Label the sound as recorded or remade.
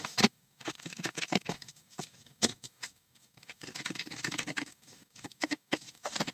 remade